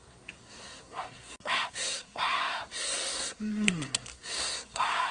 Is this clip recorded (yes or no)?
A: no